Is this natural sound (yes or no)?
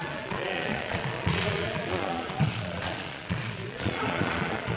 no